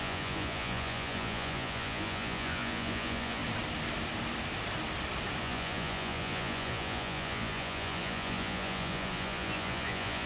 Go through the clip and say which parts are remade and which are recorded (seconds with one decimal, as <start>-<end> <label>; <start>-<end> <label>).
0.0-3.4 remade; 3.4-5.4 recorded; 5.4-10.3 remade